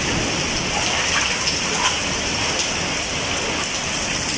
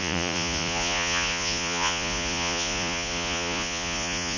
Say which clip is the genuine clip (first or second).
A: first